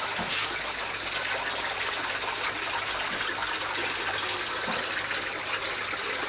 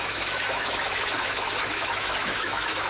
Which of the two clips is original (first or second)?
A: first